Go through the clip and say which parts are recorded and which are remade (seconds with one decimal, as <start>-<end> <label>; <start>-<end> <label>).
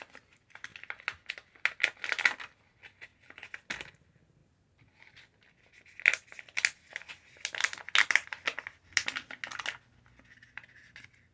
0.0-11.3 recorded